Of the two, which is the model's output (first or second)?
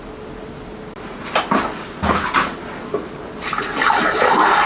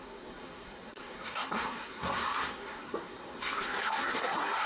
second